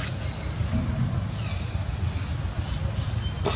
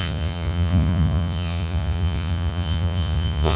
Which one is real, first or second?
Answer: first